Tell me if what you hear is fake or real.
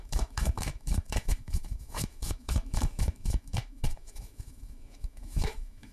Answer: fake